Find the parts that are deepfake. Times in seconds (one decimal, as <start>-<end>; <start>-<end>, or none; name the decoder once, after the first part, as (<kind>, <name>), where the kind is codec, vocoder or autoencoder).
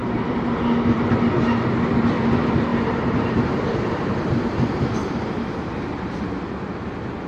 2.7-4.3 (vocoder, BigVGAN v2); 5.0-5.7